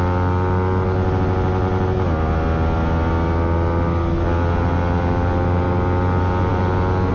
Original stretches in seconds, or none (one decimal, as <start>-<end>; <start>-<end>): 0.0-7.1